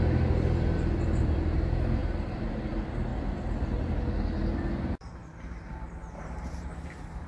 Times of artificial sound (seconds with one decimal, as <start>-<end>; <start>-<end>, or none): 2.0-2.7; 5.2-7.3